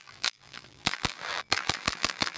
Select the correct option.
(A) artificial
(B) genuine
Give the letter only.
A